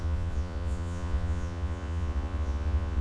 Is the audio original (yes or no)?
no